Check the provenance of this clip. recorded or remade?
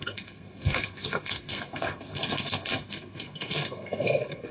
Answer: remade